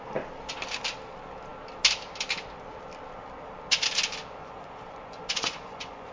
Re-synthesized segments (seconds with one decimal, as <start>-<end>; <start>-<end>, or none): 4.4-6.1